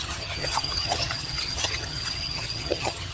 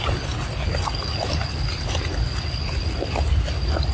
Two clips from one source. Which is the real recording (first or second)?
second